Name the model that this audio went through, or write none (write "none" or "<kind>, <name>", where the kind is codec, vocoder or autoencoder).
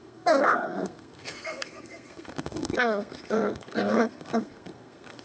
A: codec, SNAC